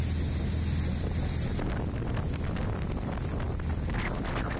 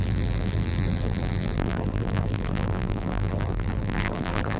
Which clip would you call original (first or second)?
first